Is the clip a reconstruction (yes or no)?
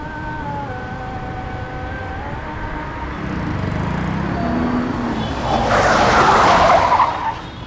no